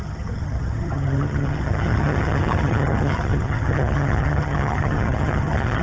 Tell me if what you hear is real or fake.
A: fake